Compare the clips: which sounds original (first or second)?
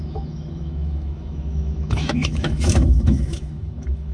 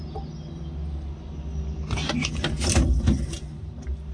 second